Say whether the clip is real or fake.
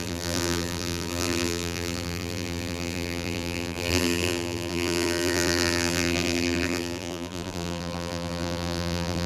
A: fake